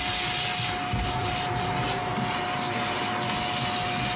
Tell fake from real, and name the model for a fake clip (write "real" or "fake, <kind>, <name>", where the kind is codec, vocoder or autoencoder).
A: real